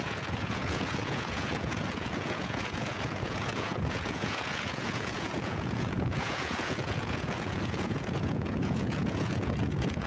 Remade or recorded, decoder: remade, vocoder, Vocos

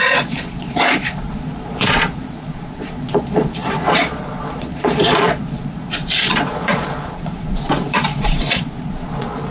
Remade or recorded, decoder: remade, vocoder, Vocos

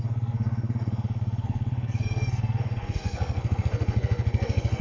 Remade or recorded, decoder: remade, codec, SNAC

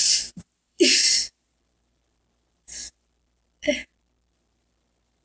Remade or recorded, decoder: remade, vocoder, BigVGAN v2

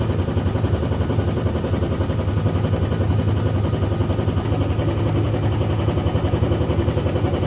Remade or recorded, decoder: recorded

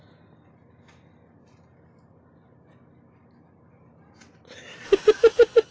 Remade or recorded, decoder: recorded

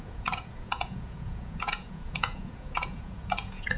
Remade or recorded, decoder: remade, vocoder, Vocos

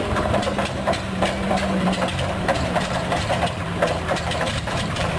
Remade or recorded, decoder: remade, vocoder, BigVGAN v2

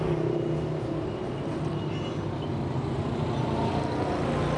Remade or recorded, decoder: recorded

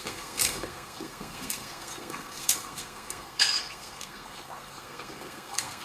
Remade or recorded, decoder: remade, codec, SNAC